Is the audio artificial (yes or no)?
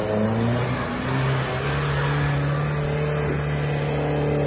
no